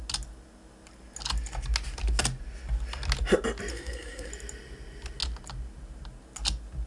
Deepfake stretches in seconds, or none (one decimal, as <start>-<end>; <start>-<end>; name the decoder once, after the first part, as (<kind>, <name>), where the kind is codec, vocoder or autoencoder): 3.7-4.3 (codec, SNAC)